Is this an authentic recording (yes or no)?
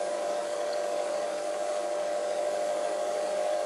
no